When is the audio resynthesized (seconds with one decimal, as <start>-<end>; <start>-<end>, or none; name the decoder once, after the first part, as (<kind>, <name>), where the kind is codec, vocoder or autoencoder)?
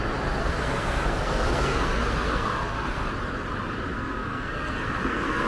0.4-3.1 (codec, SNAC); 3.9-5.5